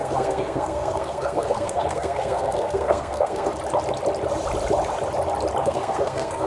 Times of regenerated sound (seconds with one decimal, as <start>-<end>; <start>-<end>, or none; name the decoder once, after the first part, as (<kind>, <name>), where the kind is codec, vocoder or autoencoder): 0.0-3.5 (codec, SNAC); 5.6-6.5